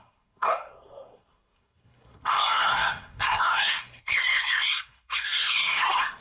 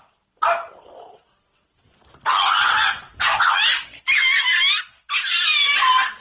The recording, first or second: second